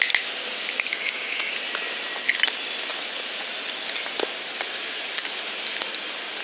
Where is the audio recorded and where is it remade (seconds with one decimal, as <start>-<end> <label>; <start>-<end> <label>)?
0.0-0.9 recorded; 0.9-1.5 remade; 1.5-6.4 recorded